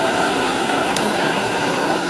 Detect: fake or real fake